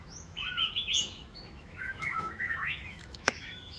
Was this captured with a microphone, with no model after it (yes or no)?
no